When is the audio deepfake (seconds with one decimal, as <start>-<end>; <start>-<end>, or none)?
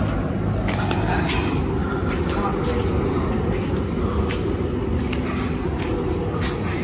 none